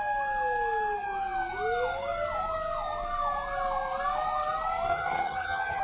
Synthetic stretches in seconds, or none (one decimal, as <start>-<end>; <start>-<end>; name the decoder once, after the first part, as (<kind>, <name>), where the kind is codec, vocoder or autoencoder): 4.9-5.8 (vocoder, HiFi-GAN)